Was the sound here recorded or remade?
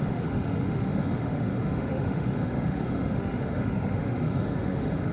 remade